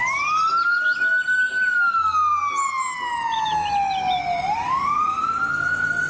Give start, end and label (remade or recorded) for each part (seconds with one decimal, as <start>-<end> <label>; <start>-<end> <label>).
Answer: 0.0-6.1 recorded